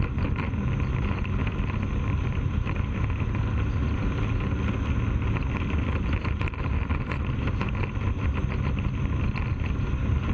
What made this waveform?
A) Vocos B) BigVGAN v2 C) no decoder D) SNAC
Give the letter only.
C